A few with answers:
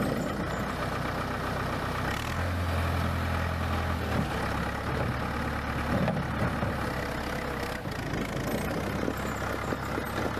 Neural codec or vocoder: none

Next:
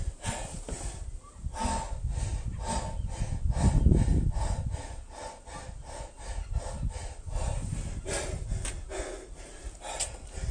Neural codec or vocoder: none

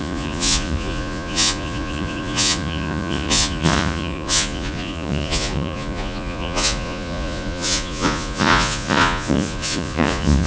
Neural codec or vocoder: vocoder, Vocos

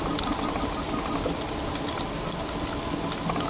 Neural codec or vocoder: none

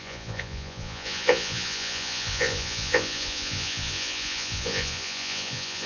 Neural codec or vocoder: vocoder, Vocos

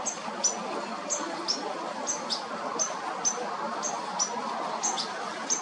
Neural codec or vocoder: none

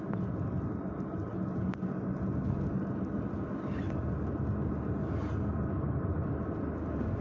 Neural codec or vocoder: none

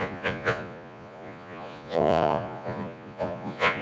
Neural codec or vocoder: vocoder, Vocos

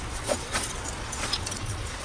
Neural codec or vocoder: vocoder, Vocos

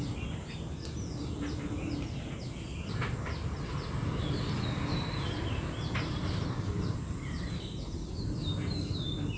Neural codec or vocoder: none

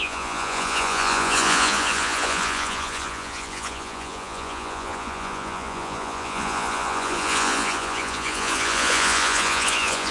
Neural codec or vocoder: vocoder, Vocos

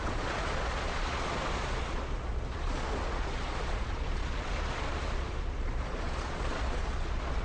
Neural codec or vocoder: vocoder, Vocos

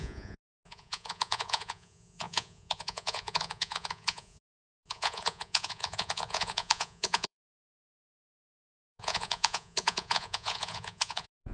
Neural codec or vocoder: vocoder, Vocos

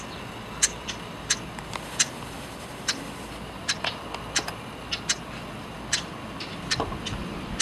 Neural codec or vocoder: none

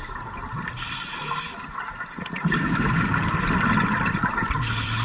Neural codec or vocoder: none